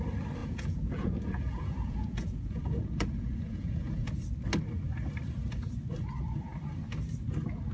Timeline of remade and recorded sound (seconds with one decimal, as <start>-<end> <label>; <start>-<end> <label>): 0.0-0.4 recorded; 0.4-4.1 remade; 4.1-7.7 recorded